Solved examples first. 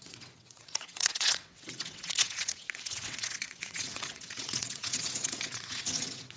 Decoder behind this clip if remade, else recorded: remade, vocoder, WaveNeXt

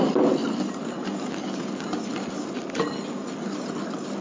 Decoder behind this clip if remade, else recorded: recorded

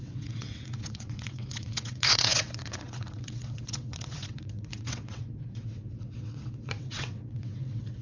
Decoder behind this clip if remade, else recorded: remade, vocoder, WaveNeXt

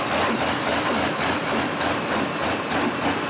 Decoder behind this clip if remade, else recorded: recorded